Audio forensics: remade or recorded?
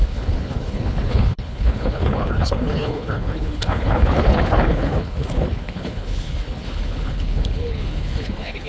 remade